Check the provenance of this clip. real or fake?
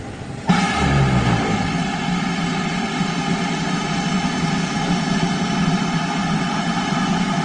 real